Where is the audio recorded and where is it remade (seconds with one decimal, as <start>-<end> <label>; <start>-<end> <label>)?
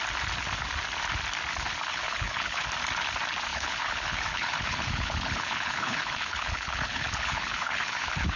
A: 0.0-1.9 recorded; 1.9-2.6 remade; 2.6-3.5 recorded; 3.5-8.4 remade